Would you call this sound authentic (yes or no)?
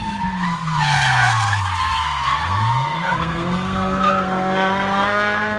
no